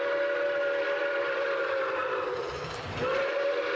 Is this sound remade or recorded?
recorded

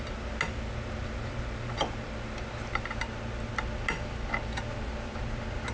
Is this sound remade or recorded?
recorded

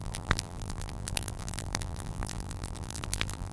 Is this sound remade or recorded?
remade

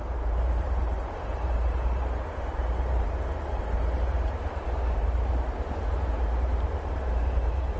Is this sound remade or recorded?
remade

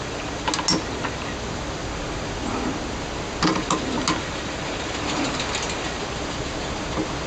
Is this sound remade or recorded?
recorded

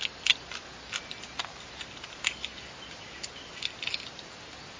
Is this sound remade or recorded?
recorded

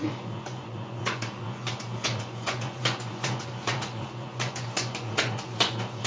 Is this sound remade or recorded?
remade